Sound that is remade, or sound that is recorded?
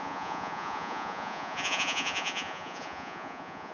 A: remade